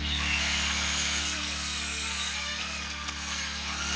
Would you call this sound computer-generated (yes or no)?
yes